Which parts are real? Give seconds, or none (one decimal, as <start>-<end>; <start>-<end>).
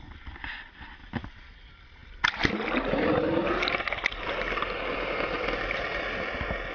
0.0-6.7